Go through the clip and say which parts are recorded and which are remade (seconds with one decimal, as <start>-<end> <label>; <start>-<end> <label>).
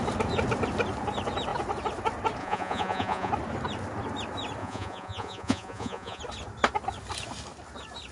0.0-2.4 recorded; 2.4-3.3 remade; 3.3-4.6 recorded; 4.6-6.2 remade; 6.2-8.1 recorded